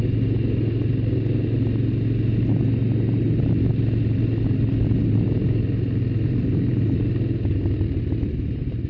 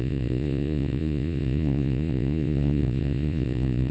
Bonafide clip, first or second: first